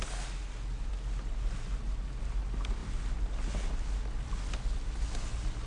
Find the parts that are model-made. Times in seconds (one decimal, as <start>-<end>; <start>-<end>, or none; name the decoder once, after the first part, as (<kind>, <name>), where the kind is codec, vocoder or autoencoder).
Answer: none